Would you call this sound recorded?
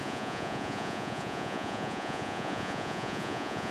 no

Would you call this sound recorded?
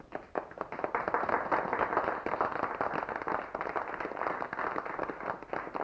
yes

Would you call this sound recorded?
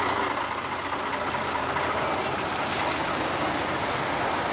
yes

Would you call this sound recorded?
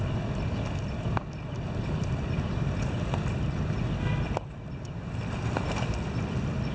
yes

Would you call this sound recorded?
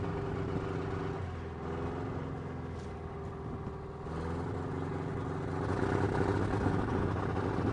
yes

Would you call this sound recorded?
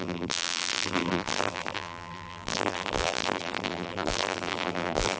no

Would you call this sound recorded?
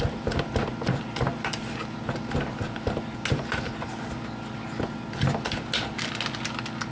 yes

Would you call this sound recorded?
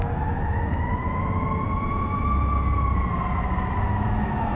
yes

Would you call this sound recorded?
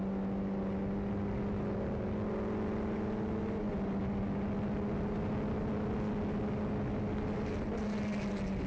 yes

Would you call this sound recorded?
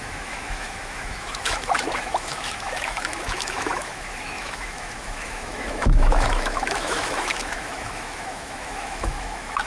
no